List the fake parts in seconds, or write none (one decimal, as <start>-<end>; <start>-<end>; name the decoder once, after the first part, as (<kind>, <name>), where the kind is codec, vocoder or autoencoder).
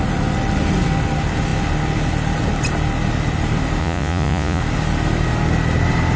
3.8-4.6 (vocoder, Vocos)